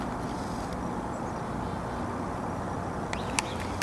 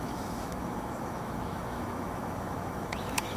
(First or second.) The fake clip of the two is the second